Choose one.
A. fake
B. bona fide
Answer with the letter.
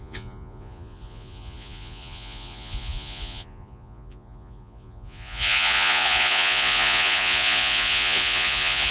A